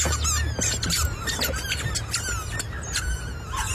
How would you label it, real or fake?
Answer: real